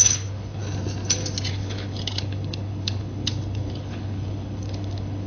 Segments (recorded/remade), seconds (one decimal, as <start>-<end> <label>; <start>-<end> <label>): 0.0-0.6 remade; 0.6-1.5 recorded; 1.5-5.3 remade